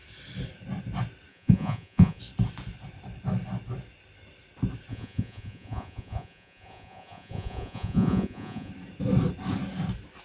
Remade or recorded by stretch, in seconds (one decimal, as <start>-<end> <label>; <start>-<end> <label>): 0.0-1.3 recorded; 1.3-2.2 remade; 2.2-4.9 recorded; 4.9-8.7 remade; 8.7-10.2 recorded